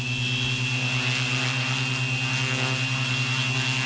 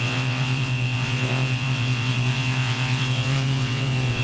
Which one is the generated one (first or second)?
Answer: second